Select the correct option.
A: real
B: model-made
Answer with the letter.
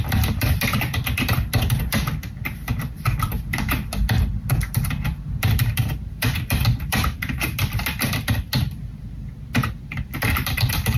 B